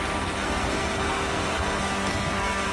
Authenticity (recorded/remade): remade